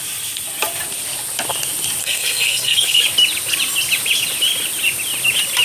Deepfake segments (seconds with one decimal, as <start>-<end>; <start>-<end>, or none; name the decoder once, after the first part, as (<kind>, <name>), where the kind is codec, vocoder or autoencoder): 2.0-3.0 (codec, SNAC)